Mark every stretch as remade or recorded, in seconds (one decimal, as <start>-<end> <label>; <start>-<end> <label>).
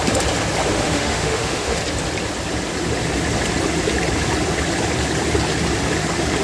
0.0-0.7 recorded; 0.7-1.8 remade; 1.8-6.4 recorded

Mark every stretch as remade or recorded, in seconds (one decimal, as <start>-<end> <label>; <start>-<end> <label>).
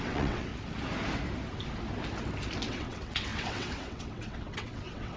0.0-0.5 remade; 0.5-2.7 recorded; 2.7-5.2 remade